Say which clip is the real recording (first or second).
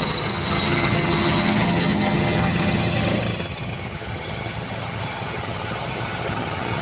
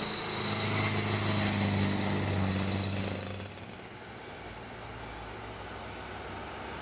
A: second